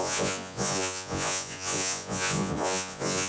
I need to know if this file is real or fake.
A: fake